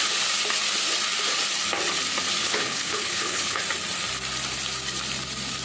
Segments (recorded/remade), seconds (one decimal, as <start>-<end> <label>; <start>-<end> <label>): 0.0-2.4 recorded; 2.4-3.6 remade; 3.6-5.6 recorded